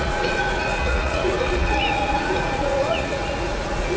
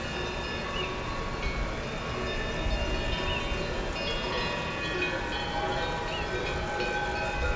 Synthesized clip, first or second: first